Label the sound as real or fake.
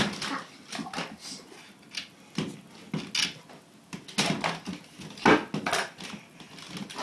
real